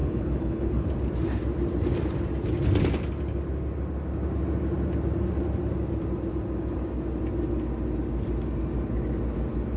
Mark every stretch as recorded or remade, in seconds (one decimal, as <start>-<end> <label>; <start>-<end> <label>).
0.0-0.9 remade; 0.9-9.8 recorded